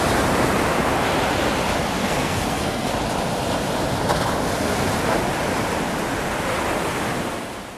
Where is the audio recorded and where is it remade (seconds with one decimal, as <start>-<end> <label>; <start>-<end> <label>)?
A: 0.0-2.0 recorded; 2.0-2.9 remade; 2.9-7.8 recorded